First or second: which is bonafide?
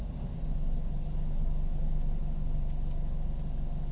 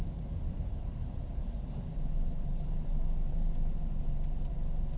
first